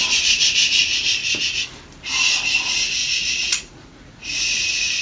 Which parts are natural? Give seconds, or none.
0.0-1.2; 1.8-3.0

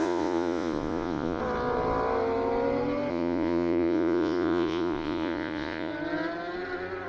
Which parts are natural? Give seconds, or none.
1.4-3.1; 5.9-7.1

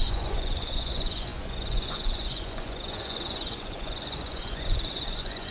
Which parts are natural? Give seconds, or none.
none

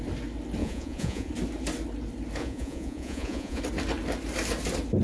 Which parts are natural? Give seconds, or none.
0.0-0.6; 1.3-2.4; 3.6-5.0

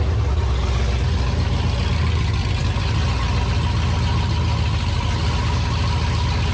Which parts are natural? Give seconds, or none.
0.0-6.5

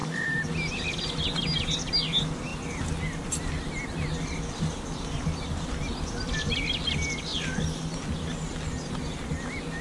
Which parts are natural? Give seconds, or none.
0.0-9.8

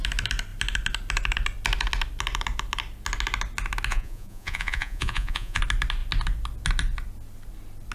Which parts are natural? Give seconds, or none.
0.0-3.9; 5.6-7.9

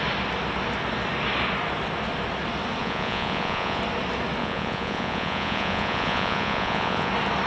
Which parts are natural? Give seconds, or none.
0.0-2.8; 3.8-4.4; 7.1-7.5